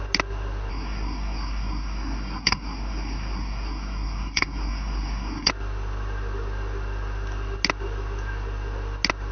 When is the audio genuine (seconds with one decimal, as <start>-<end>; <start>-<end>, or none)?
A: 0.0-0.7; 5.5-9.3